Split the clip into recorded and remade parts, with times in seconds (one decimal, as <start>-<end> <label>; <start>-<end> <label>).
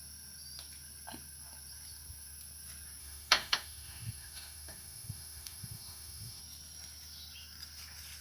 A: 0.0-3.0 recorded; 3.0-6.4 remade; 6.4-8.2 recorded